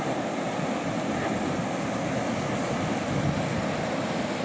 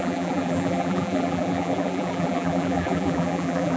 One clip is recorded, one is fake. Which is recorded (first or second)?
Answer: first